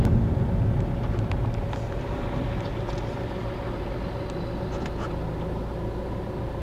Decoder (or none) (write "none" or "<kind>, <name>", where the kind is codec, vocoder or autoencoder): none